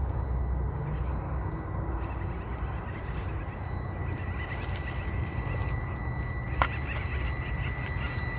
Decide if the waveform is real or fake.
real